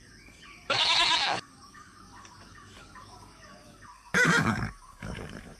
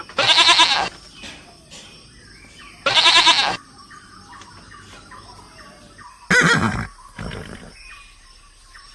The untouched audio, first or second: second